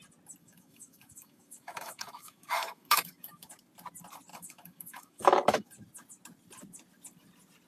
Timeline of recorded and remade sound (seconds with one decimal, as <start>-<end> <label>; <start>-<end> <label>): 0.0-0.4 recorded; 0.4-3.5 remade; 3.5-4.3 recorded; 4.3-5.7 remade; 5.7-7.7 recorded